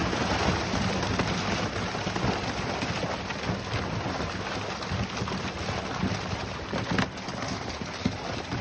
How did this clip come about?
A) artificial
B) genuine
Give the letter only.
B